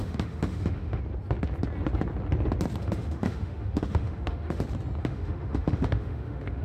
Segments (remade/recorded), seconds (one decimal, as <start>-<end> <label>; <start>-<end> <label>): 0.0-1.0 remade; 1.0-2.8 recorded; 2.8-4.6 remade; 4.6-5.0 recorded; 5.0-6.6 remade